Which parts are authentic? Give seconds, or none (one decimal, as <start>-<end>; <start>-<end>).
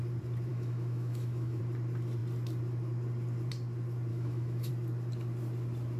0.0-0.5; 1.6-4.1; 4.7-6.0